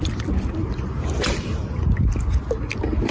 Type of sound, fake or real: real